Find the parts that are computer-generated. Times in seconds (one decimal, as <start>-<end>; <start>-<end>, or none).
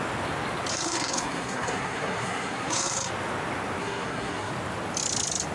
0.7-3.1; 3.8-4.5